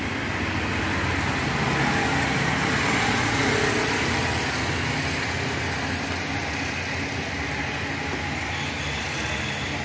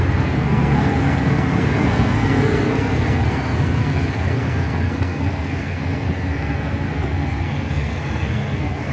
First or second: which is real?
first